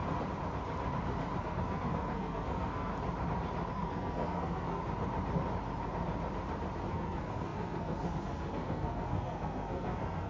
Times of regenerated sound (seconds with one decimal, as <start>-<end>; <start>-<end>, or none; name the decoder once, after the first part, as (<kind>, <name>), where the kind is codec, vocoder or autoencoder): 1.4-2.9 (codec, SNAC); 3.7-4.8; 6.9-10.3